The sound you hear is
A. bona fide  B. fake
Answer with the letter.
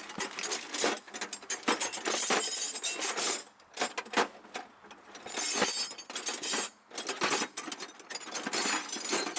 A